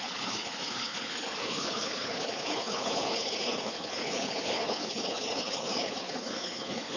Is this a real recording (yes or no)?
no